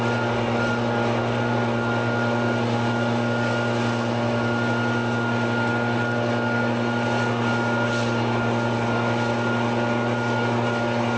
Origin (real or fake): real